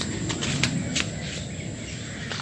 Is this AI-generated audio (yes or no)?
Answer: no